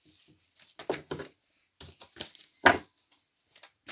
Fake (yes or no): no